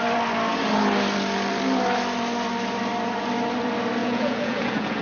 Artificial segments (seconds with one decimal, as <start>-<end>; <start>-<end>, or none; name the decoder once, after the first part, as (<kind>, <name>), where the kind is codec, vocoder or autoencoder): 4.0-5.0 (vocoder, Vocos)

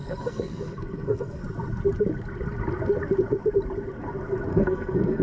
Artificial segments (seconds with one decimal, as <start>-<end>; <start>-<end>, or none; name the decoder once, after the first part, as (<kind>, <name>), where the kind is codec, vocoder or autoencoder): 0.0-1.4 (codec, SNAC); 4.5-5.2

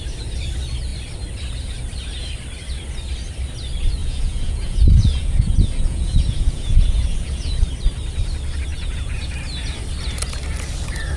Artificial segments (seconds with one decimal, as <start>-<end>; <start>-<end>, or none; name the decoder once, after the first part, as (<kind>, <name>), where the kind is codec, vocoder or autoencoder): 4.0-7.5 (vocoder, Vocos); 8.7-9.3

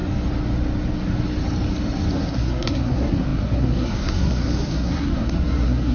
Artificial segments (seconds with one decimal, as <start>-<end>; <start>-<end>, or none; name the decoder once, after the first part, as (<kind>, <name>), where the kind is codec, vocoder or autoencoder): 2.1-5.9 (codec, SNAC)